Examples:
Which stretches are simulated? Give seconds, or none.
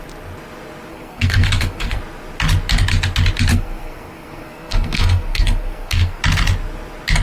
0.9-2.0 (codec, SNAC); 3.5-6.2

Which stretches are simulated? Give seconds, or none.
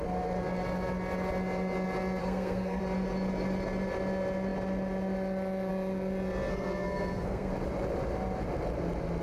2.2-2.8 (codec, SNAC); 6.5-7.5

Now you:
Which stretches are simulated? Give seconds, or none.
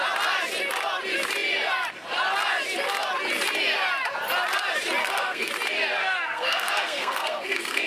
5.0-5.5 (codec, SNAC); 6.0-7.9